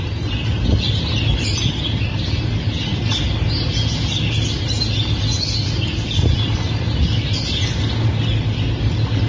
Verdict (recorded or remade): recorded